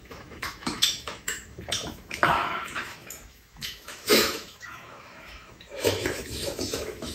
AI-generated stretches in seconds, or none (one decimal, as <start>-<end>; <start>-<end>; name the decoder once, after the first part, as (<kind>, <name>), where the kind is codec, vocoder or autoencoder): 0.0-7.1 (autoencoder, DAC-VAE)